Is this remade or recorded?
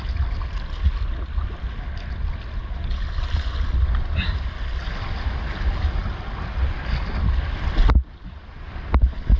recorded